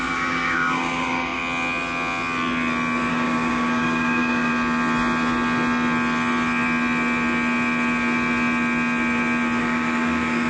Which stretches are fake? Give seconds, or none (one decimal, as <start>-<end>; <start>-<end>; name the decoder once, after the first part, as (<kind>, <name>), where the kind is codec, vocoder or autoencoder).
0.0-1.4 (codec, DAC); 3.1-4.5; 9.6-10.5